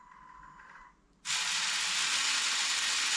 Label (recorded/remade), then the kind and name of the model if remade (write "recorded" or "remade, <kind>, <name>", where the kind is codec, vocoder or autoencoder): recorded